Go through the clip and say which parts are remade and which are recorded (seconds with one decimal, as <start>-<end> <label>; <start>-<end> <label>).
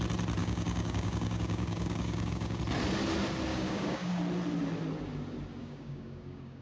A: 0.0-0.4 recorded; 0.4-2.6 remade; 2.6-3.5 recorded; 3.5-4.2 remade; 4.2-5.6 recorded; 5.6-6.6 remade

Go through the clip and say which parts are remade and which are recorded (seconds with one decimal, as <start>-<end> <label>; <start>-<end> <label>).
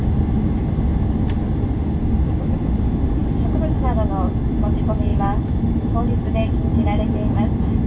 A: 0.0-5.1 recorded; 5.1-6.0 remade; 6.0-7.9 recorded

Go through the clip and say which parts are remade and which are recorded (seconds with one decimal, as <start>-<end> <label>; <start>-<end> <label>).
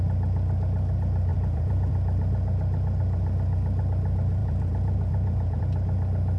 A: 0.0-1.3 recorded; 1.3-1.9 remade; 1.9-4.4 recorded; 4.4-5.6 remade; 5.6-6.4 recorded